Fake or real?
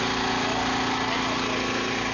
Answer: real